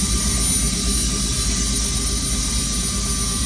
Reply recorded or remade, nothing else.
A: recorded